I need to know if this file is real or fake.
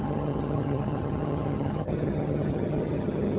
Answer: fake